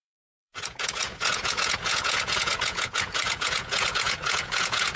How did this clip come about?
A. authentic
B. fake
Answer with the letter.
B